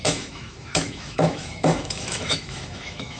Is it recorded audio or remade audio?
remade